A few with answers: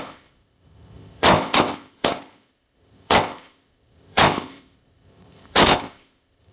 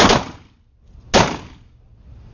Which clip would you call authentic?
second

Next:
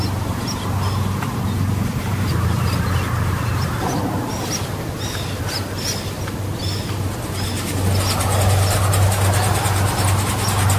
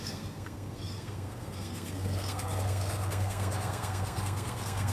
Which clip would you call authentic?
first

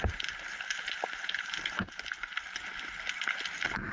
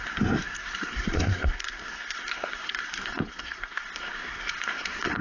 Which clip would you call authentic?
first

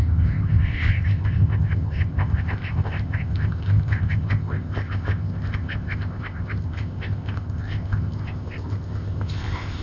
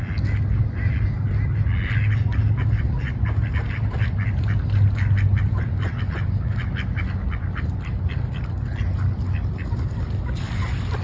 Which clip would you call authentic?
second